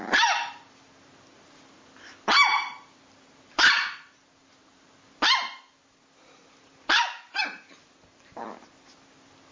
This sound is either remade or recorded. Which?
recorded